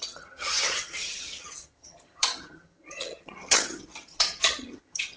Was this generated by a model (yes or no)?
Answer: yes